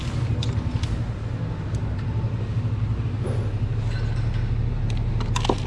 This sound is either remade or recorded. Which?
recorded